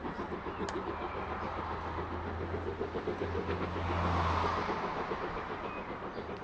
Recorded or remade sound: recorded